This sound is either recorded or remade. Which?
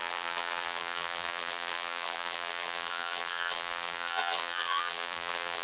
remade